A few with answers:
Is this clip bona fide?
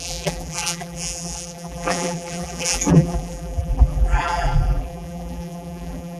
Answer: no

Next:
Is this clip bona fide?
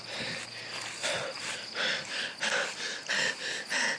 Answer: yes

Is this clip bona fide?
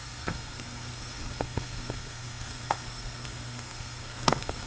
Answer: no